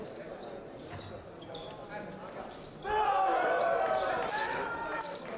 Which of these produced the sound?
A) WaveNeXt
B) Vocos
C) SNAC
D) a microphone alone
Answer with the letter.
D